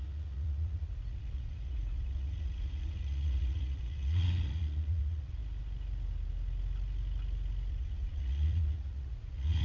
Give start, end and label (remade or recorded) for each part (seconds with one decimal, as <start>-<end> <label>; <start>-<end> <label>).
0.0-5.4 remade; 5.4-7.7 recorded; 7.7-9.6 remade